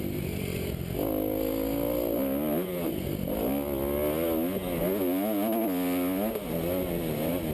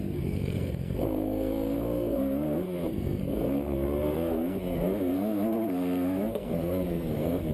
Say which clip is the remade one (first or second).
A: second